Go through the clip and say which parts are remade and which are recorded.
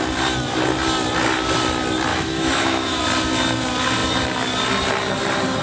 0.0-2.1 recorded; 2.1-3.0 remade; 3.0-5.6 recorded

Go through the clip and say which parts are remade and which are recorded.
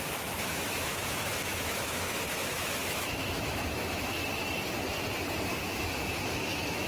0.0-4.2 remade; 4.2-5.8 recorded; 5.8-6.9 remade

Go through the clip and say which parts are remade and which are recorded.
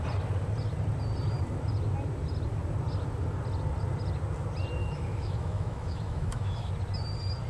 0.0-4.8 recorded; 4.8-6.7 remade; 6.7-7.5 recorded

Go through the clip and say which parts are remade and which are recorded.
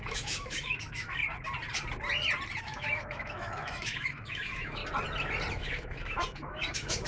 0.0-1.2 remade; 1.2-2.6 recorded; 2.6-4.8 remade; 4.8-5.5 recorded; 5.5-7.1 remade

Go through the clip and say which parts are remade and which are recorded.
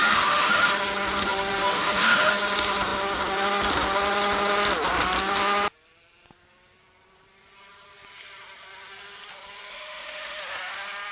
0.0-0.7 remade; 0.7-1.2 recorded; 1.2-2.3 remade; 2.3-9.7 recorded; 9.7-10.4 remade; 10.4-11.1 recorded